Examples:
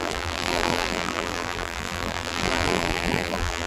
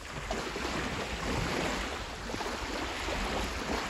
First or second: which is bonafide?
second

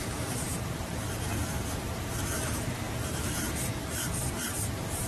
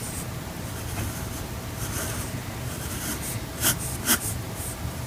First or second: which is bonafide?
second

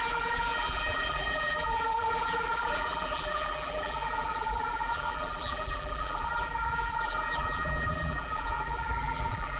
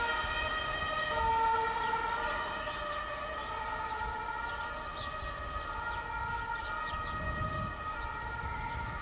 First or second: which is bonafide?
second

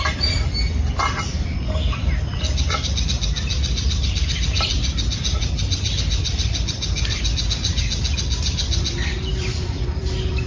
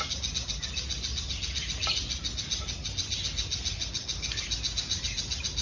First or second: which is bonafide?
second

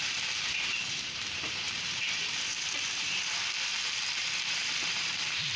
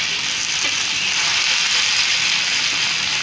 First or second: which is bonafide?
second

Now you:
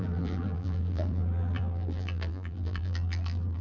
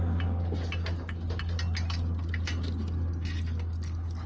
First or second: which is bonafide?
second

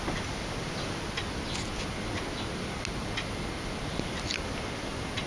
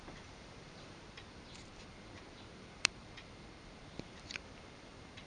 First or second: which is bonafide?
first